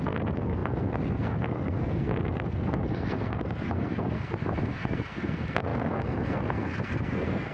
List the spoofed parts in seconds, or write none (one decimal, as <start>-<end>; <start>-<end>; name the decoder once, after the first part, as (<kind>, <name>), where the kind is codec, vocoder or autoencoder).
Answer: 0.0-7.5 (codec, SNAC)